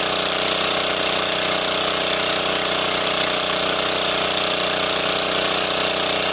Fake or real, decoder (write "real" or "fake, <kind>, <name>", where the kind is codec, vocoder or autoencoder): real